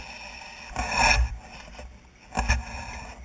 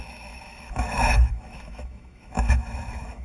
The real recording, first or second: first